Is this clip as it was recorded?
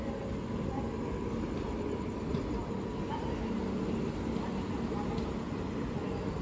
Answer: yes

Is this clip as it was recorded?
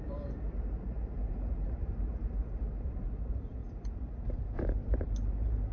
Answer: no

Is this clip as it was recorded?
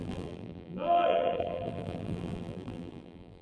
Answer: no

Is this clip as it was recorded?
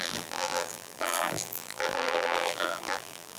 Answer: no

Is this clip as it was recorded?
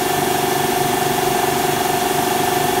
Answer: yes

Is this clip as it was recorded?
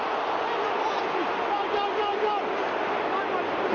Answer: yes